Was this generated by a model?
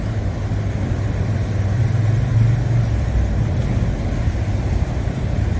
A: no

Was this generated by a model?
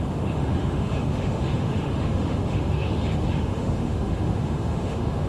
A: yes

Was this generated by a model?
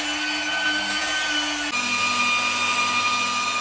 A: no